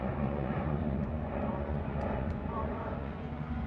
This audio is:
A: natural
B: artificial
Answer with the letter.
B